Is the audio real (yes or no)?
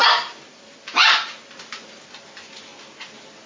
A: yes